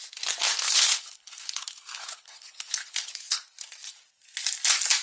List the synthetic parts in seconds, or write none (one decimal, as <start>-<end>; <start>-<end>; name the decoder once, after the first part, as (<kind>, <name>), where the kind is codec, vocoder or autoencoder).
0.6-3.4 (codec, HILCodec)